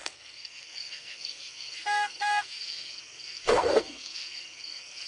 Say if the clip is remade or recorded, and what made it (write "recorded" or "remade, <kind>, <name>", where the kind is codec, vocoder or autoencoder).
remade, codec, SNAC